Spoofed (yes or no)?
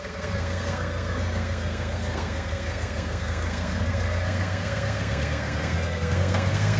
yes